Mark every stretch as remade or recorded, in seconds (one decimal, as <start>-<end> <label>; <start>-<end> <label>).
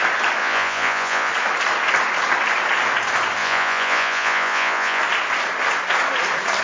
0.0-0.4 recorded; 0.4-1.3 remade; 1.3-3.4 recorded; 3.4-5.0 remade; 5.0-6.6 recorded